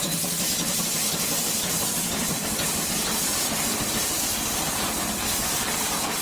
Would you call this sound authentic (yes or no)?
yes